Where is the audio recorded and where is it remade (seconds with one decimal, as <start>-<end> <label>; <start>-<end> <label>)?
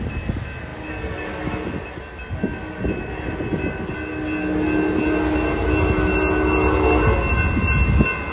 0.0-8.3 recorded